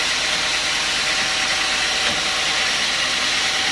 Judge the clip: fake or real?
real